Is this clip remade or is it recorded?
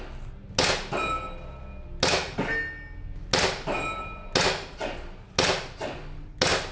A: recorded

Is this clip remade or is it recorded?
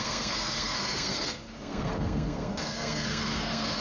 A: remade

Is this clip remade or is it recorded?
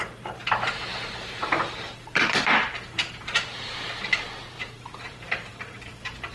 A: remade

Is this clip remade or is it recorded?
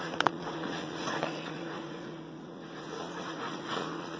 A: remade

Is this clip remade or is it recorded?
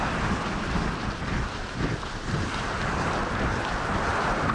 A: recorded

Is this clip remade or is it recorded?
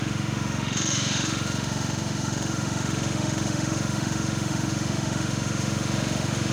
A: remade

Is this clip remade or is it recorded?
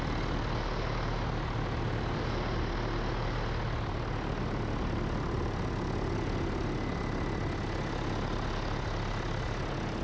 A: recorded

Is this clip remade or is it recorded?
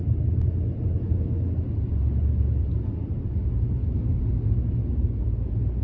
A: recorded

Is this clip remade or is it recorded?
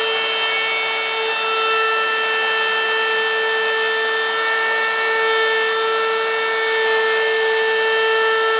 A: recorded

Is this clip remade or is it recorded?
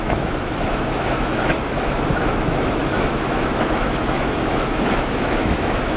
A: remade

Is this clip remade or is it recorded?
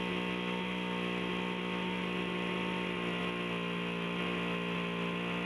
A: recorded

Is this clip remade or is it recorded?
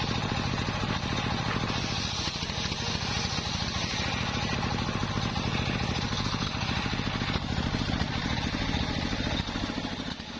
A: recorded